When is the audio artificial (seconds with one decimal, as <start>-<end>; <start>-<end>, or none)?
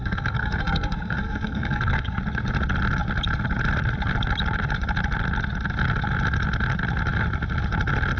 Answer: 0.0-2.2